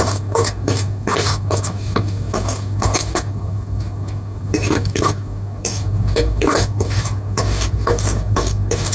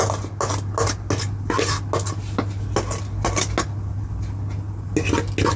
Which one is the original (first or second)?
second